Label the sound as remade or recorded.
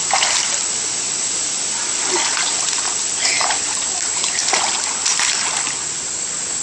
recorded